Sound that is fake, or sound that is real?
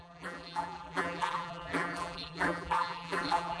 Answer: fake